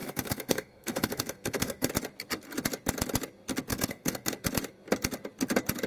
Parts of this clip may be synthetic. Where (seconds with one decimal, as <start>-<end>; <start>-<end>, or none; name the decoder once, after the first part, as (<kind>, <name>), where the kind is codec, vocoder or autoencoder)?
0.0-1.9 (codec, SNAC); 3.7-4.3